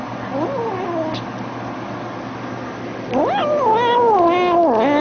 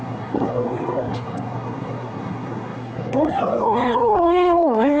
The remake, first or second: second